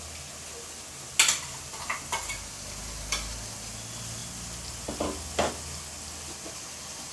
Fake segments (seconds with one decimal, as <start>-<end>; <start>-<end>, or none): none